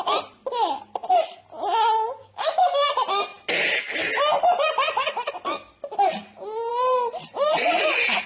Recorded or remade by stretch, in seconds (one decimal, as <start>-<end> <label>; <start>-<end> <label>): 0.0-2.2 recorded; 2.2-2.9 remade; 2.9-8.3 recorded